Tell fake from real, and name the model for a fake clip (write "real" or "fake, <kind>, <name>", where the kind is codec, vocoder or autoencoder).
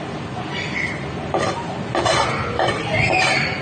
real